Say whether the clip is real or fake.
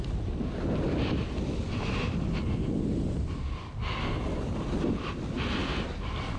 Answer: real